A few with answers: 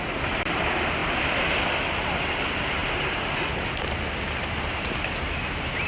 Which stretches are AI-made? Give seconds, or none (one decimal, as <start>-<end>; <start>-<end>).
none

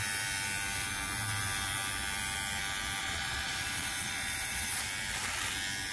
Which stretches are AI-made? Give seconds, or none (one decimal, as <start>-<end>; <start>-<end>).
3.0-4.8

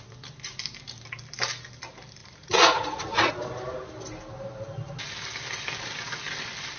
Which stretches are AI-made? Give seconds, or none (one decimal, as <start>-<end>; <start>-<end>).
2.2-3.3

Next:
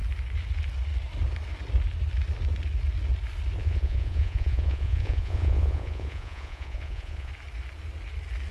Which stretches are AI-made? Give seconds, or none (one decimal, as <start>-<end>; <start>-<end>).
3.6-7.3

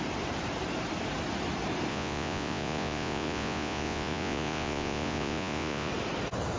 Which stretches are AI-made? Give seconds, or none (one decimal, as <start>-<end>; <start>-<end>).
1.9-5.9

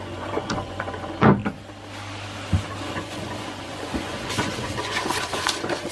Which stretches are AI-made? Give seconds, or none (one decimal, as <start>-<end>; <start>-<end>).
0.0-1.4; 2.8-5.9

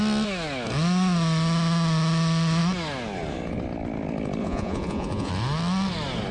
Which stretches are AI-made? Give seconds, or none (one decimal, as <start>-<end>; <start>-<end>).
4.4-5.3

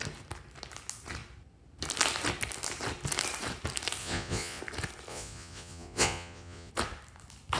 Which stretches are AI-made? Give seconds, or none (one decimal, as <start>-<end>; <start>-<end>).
4.0-4.6; 5.1-6.7